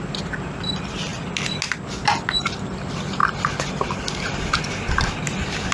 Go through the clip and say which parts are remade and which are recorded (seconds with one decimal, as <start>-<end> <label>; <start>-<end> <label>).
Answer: 0.0-1.1 remade; 1.1-2.7 recorded; 2.7-5.7 remade